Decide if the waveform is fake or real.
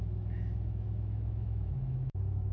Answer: fake